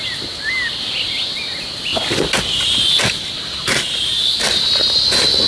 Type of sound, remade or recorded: recorded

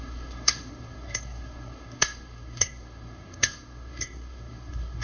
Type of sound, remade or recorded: remade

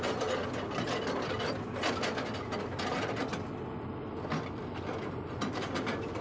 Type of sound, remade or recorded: recorded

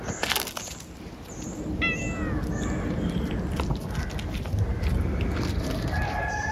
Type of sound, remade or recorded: recorded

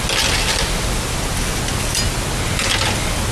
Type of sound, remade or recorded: recorded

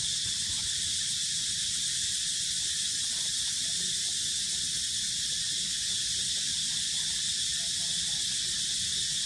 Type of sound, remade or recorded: recorded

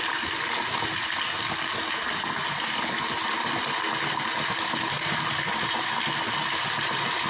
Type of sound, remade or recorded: recorded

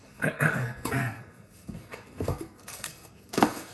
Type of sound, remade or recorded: remade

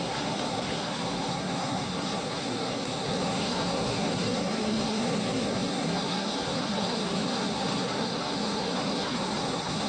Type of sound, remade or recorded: remade